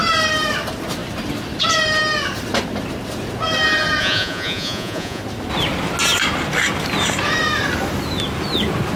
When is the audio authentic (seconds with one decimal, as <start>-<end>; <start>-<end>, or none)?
0.0-4.0; 5.2-9.0